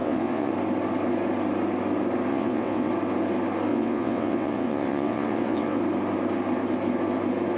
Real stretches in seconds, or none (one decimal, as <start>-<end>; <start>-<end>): 0.5-2.3; 2.9-3.7; 5.8-7.6